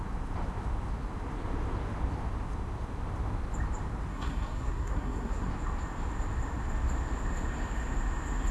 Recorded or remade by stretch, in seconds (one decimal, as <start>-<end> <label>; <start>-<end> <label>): 0.0-4.1 recorded; 4.1-5.5 remade; 5.5-8.5 recorded